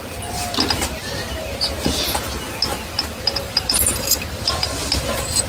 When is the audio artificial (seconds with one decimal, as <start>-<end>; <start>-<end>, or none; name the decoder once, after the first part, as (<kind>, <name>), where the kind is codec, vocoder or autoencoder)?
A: 2.7-4.2 (vocoder, BigVGAN v2)